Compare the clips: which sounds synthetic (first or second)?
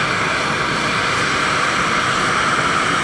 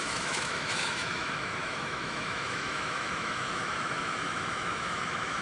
second